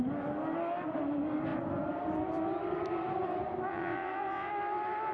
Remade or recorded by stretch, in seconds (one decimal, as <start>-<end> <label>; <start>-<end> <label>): 0.0-3.7 recorded; 3.7-4.5 remade; 4.5-5.1 recorded